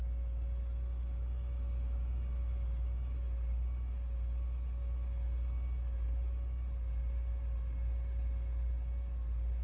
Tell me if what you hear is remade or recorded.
recorded